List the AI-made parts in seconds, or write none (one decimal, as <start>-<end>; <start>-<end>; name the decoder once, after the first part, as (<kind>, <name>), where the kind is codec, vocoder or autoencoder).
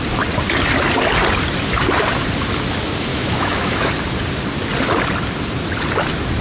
3.1-3.9 (autoencoder, DAC-VAE)